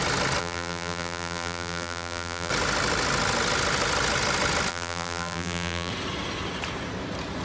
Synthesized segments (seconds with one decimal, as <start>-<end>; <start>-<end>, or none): 0.4-2.5; 4.7-5.9